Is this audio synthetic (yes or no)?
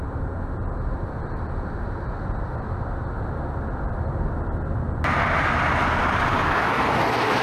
no